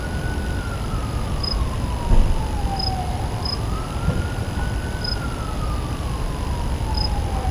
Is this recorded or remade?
recorded